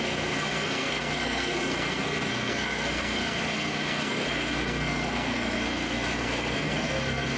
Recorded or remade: remade